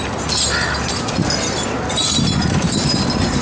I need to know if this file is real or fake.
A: real